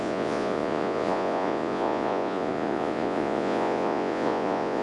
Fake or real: fake